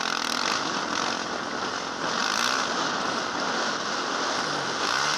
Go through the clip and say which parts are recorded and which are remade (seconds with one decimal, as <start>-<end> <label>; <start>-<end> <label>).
0.0-5.2 recorded